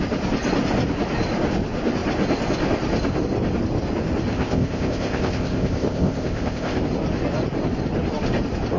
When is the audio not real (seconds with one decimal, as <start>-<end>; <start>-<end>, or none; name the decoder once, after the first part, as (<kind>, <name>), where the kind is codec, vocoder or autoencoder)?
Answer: 4.3-6.8 (codec, ZipCodec)